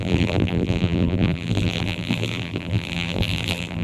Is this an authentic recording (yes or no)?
no